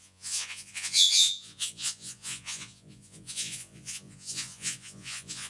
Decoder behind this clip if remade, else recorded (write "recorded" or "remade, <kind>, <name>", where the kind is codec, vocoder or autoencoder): remade, vocoder, Vocos